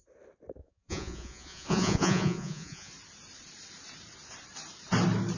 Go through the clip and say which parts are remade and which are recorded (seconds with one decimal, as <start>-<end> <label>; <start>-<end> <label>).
0.0-0.6 recorded; 0.6-2.9 remade; 2.9-5.4 recorded

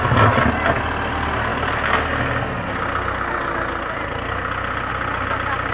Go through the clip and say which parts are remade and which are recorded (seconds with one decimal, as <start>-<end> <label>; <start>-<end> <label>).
0.0-5.7 recorded

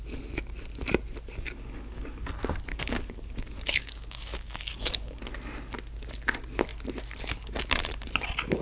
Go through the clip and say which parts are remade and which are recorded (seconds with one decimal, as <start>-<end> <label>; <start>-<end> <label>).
0.0-1.3 recorded; 1.3-2.3 remade; 2.3-2.7 recorded; 2.7-5.2 remade; 5.2-8.6 recorded

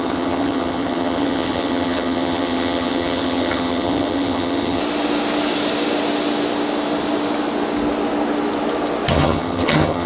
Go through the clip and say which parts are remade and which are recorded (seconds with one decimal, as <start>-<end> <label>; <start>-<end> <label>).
0.0-4.8 remade; 4.8-9.1 recorded; 9.1-10.1 remade

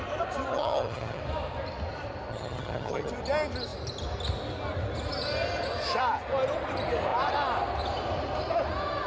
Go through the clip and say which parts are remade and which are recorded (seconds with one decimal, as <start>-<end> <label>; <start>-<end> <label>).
0.0-0.5 recorded; 0.5-1.2 remade; 1.2-2.3 recorded; 2.3-3.1 remade; 3.1-9.1 recorded